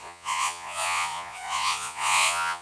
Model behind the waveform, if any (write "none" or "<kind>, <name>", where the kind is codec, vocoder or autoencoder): vocoder, Vocos